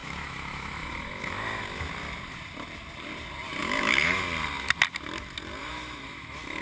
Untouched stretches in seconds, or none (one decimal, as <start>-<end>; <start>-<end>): 1.9-3.6; 4.2-5.6